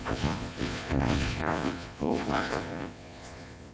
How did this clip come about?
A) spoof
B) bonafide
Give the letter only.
A